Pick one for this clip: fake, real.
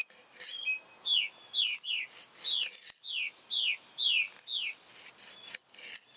real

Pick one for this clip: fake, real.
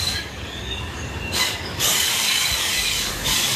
fake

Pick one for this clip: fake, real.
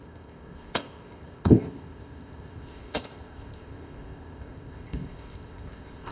fake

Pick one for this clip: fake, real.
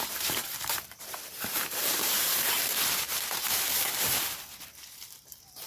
fake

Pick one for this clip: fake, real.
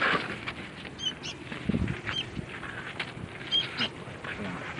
real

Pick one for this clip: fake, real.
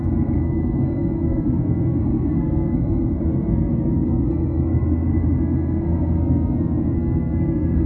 fake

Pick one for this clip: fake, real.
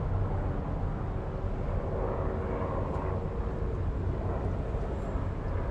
real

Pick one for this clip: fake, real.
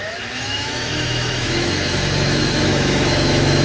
fake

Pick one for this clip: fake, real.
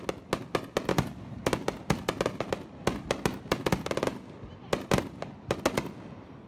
real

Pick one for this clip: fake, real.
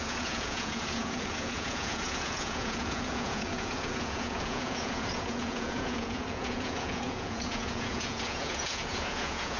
fake